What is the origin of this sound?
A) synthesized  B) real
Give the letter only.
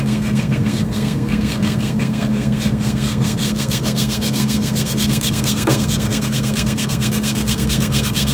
A